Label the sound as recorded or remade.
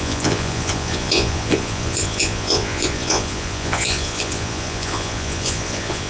remade